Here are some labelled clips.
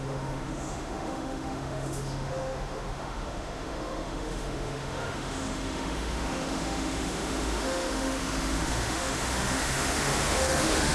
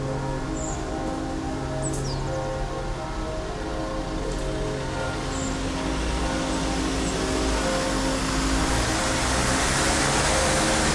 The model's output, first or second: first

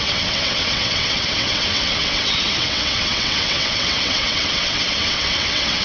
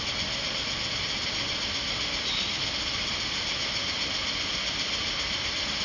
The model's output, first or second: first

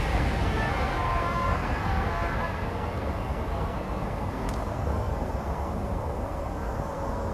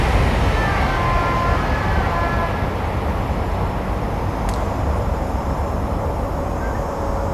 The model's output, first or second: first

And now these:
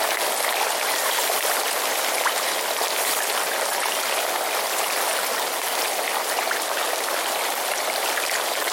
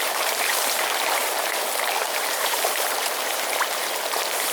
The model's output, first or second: second